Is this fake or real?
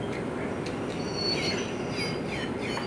real